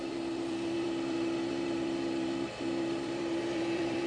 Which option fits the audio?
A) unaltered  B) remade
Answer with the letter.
B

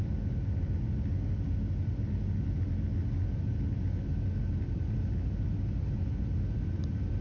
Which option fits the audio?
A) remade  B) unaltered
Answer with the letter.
B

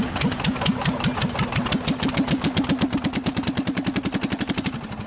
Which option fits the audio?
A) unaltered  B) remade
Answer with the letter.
A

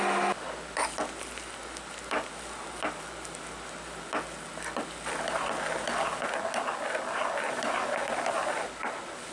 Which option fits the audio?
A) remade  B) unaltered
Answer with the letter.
B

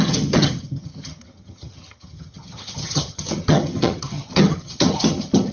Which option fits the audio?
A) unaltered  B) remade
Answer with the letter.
B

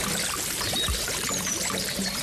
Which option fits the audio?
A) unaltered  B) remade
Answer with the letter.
B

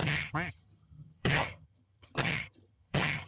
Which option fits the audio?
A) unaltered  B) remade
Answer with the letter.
B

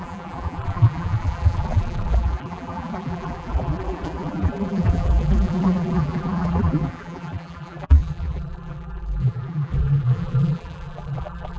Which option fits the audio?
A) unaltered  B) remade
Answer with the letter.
B